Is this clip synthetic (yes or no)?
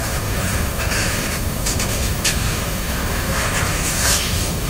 yes